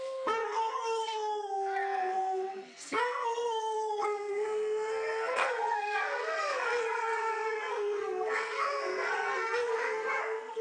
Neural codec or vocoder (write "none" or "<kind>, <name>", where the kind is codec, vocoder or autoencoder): codec, SNAC